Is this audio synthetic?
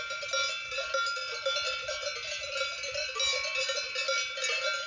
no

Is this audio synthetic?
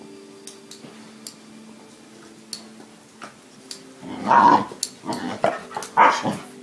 no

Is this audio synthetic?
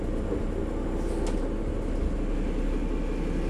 no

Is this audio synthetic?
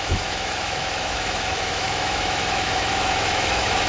yes